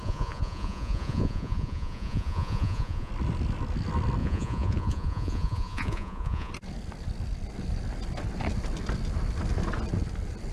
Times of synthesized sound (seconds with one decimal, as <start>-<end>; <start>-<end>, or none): 0.0-3.1; 4.2-6.5